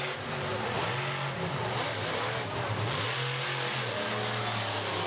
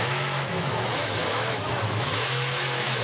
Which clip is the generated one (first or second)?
second